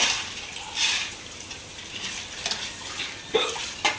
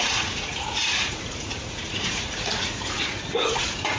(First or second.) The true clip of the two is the first